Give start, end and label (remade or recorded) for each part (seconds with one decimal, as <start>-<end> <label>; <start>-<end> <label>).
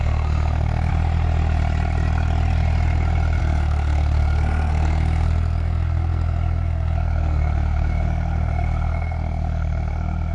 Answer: 0.0-0.9 remade; 0.9-3.4 recorded; 3.4-10.3 remade